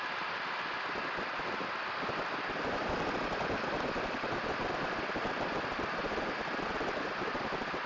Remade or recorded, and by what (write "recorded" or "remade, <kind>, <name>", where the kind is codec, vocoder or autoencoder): recorded